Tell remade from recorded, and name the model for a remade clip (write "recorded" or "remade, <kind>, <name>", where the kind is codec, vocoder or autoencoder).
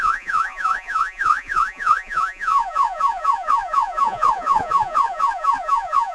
remade, vocoder, Vocos